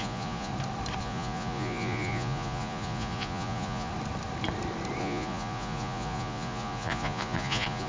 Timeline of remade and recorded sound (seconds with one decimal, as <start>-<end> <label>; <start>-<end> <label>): 0.0-0.5 remade; 0.5-1.0 recorded; 1.0-3.9 remade; 3.9-5.0 recorded; 5.0-7.9 remade